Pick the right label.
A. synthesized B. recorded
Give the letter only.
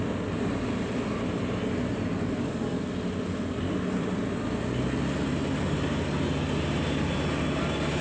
B